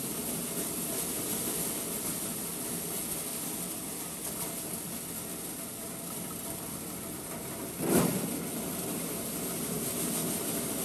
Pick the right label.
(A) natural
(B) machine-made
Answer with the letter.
A